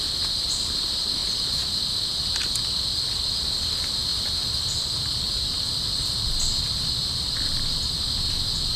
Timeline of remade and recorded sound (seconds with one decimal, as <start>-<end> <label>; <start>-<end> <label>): 0.0-1.2 recorded; 1.2-1.8 remade; 1.8-8.8 recorded